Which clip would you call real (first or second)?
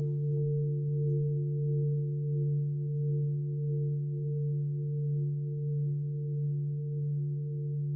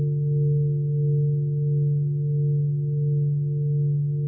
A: second